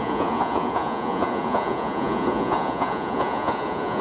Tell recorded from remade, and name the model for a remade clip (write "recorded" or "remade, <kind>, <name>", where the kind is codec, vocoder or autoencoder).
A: remade, vocoder, Vocos